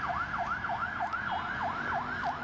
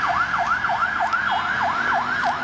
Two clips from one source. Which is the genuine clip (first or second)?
second